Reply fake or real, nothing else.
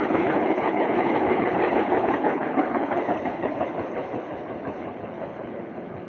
fake